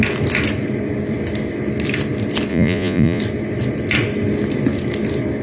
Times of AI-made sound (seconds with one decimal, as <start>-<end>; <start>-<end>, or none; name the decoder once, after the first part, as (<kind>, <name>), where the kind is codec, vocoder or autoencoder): 2.5-3.2 (vocoder, Vocos)

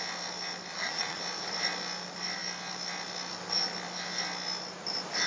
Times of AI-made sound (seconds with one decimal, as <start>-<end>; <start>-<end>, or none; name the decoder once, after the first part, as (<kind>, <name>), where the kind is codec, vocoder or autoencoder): 0.7-1.2 (vocoder, Vocos)

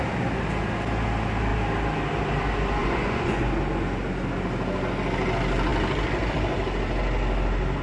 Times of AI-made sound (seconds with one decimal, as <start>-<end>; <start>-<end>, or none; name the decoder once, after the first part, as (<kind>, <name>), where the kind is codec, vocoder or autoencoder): 2.8-3.5 (vocoder, Vocos)